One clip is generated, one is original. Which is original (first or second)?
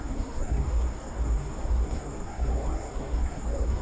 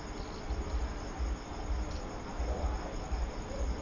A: second